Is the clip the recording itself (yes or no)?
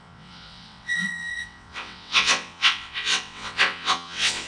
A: no